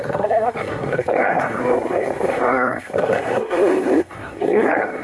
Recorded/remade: remade